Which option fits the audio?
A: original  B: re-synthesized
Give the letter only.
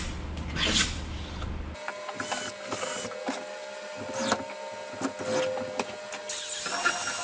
A